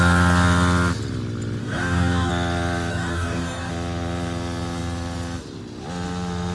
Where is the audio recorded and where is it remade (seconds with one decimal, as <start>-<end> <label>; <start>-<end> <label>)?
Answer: 0.0-1.6 recorded; 1.6-2.3 remade; 2.3-2.9 recorded; 2.9-3.7 remade; 3.7-6.5 recorded